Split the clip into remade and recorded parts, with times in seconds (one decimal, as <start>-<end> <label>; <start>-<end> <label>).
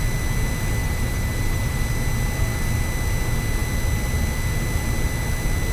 0.0-0.8 recorded; 0.8-1.8 remade; 1.8-5.7 recorded